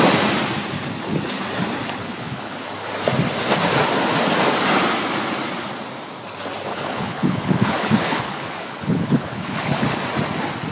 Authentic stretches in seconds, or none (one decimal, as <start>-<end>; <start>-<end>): 0.0-2.0; 2.7-6.7; 10.0-10.7